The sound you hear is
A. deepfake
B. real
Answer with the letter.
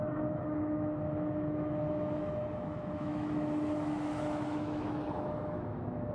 A